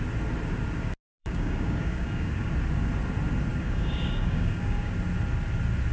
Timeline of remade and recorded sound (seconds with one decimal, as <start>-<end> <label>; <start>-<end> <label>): 0.0-1.2 recorded; 1.2-2.5 remade; 2.5-3.5 recorded; 3.5-4.9 remade; 4.9-5.9 recorded